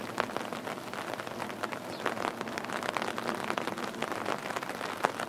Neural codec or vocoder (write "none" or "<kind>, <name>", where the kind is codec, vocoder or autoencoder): none